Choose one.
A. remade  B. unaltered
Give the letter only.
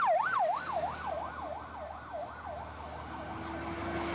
B